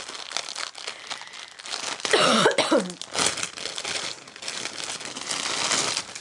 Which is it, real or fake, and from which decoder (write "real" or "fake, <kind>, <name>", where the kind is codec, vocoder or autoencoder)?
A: real